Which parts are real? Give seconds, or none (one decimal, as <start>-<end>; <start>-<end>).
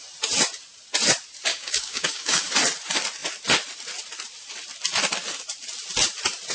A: 0.0-1.5; 2.5-6.5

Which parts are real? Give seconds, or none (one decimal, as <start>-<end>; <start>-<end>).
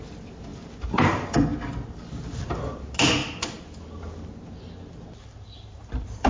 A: 0.0-6.3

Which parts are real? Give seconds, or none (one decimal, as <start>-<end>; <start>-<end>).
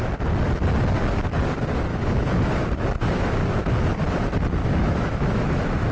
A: 0.0-1.9; 2.5-3.0; 3.6-4.6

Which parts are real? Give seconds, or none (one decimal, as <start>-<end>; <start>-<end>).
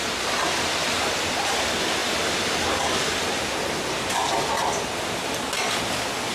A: 2.0-5.8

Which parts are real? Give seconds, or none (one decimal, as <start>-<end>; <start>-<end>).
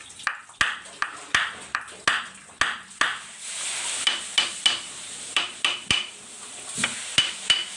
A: 0.0-7.8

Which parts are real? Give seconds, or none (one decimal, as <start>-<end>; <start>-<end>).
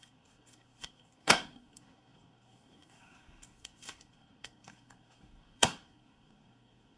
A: none